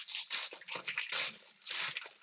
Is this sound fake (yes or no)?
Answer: no